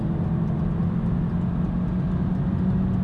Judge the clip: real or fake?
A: real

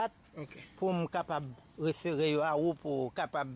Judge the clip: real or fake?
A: real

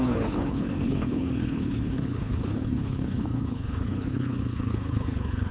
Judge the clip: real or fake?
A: fake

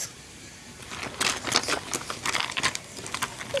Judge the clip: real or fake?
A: real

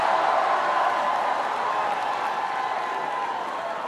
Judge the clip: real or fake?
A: real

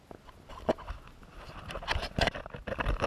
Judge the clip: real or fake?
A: real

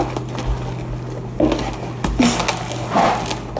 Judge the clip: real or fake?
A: real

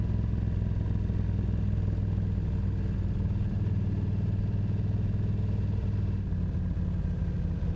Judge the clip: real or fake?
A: real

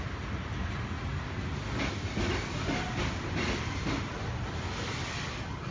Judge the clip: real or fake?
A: real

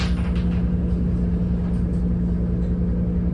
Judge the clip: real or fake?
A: real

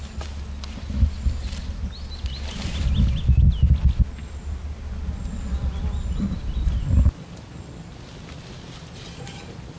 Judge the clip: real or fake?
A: real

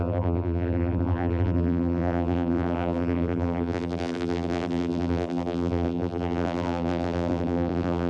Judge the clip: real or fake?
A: fake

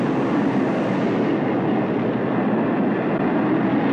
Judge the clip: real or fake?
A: real